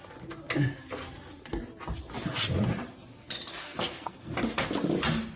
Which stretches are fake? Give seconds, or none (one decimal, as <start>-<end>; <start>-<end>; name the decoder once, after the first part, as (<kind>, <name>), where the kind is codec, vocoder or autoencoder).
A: 3.6-4.3 (codec, SNAC)